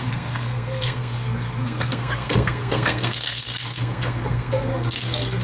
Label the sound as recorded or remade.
remade